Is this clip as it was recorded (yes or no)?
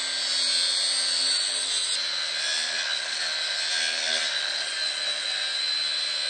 yes